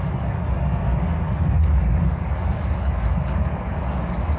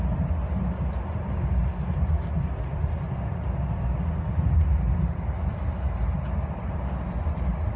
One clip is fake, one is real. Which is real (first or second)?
second